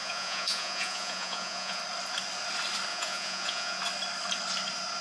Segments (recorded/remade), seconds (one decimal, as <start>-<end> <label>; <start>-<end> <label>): 0.0-1.8 remade; 1.8-2.9 recorded; 2.9-3.8 remade; 3.8-5.0 recorded